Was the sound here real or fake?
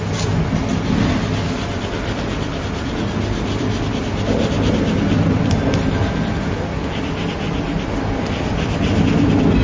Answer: real